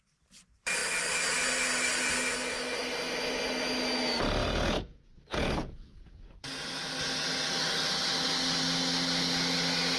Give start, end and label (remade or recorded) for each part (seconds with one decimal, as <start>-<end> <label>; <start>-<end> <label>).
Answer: 0.0-4.4 recorded; 4.4-6.3 remade; 6.3-10.0 recorded